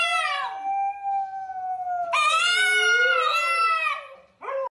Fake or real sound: real